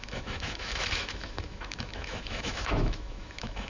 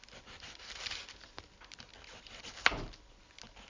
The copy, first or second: first